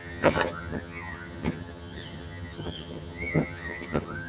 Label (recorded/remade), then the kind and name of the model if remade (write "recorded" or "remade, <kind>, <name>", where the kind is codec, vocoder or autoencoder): remade, vocoder, HiFi-GAN